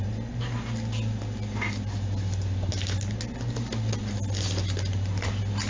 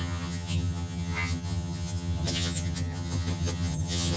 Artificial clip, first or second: second